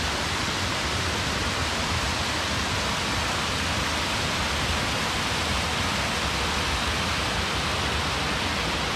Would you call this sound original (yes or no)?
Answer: yes